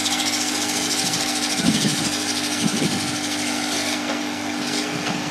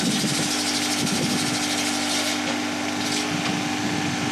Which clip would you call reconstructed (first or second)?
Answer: first